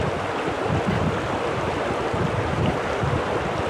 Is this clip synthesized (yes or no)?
no